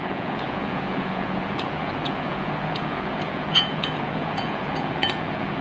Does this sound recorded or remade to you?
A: remade